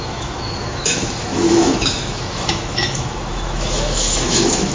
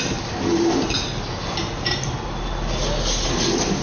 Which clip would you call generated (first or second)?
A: first